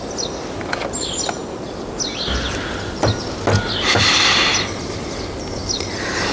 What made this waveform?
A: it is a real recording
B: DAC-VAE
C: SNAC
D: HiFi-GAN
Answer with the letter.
A